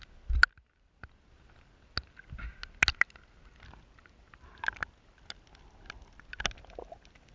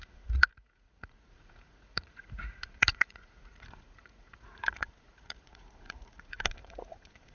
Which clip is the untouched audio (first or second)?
first